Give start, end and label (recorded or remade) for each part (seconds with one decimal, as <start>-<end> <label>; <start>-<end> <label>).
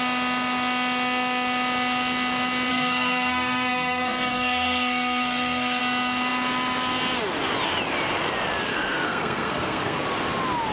0.0-2.7 recorded; 2.7-5.8 remade; 5.8-8.7 recorded; 8.7-10.0 remade; 10.0-10.7 recorded